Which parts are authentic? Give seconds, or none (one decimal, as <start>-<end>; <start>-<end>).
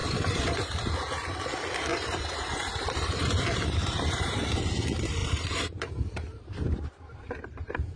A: 0.9-1.9; 4.5-5.2; 7.3-8.0